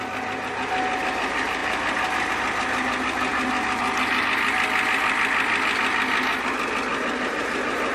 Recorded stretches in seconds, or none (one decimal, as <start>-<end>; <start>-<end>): 0.0-7.9